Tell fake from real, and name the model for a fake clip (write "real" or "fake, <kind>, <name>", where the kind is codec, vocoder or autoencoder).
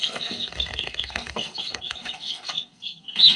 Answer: fake, codec, SNAC